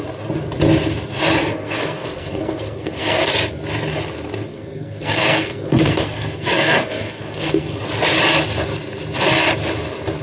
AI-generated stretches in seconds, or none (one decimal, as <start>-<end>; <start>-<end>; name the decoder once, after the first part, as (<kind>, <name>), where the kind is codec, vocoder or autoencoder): 1.4-3.3 (codec, SNAC); 4.5-7.8